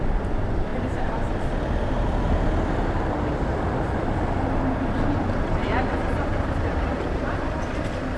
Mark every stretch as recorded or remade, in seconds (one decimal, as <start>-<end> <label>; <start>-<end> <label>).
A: 0.0-0.7 recorded; 0.7-2.2 remade; 2.2-6.3 recorded; 6.3-7.7 remade; 7.7-8.2 recorded